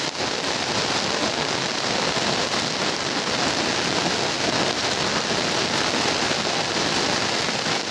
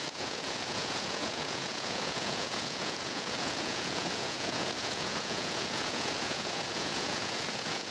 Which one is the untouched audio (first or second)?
first